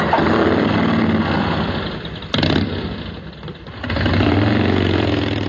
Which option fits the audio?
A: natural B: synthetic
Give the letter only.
A